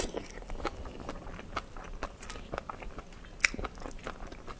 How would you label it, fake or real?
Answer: real